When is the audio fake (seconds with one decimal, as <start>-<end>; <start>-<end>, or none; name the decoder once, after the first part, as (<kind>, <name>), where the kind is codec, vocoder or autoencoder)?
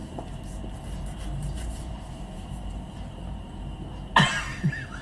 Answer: 0.0-3.7 (vocoder, BigVGAN v2)